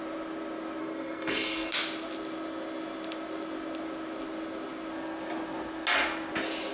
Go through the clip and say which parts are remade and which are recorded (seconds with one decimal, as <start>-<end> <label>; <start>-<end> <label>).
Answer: 0.0-0.8 recorded; 0.8-1.7 remade; 1.7-6.7 recorded

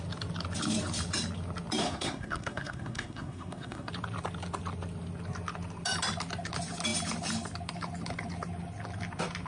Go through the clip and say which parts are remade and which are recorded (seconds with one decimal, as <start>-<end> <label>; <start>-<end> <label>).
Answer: 0.0-1.8 recorded; 1.8-3.9 remade; 3.9-9.5 recorded

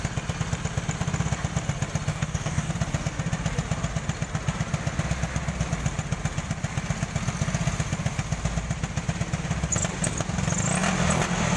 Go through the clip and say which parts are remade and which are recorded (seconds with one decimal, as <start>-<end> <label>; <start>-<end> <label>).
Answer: 0.0-2.1 recorded; 2.1-2.7 remade; 2.7-11.6 recorded

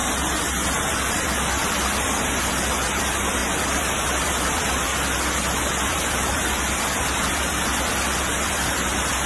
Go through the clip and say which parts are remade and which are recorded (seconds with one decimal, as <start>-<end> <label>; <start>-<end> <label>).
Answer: 0.0-4.9 remade; 4.9-5.6 recorded; 5.6-9.3 remade